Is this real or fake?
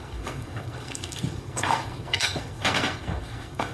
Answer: fake